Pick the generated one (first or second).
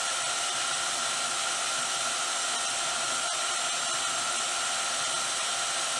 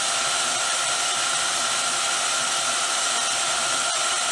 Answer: second